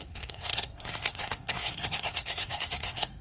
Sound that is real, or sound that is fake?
fake